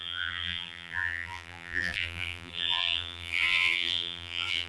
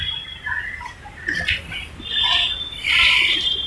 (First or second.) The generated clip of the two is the first